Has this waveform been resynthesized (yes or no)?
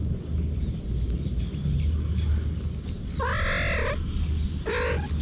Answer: no